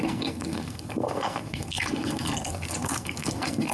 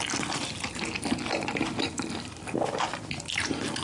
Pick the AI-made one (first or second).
first